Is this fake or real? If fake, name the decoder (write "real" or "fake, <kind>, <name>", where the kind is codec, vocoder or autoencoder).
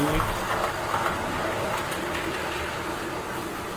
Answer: real